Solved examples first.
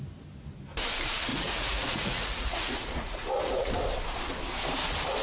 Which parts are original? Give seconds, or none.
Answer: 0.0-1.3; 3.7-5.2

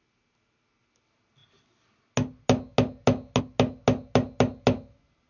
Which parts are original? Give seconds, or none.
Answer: 0.0-5.3

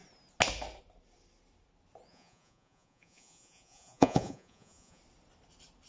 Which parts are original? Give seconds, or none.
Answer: 0.0-2.1; 5.0-5.9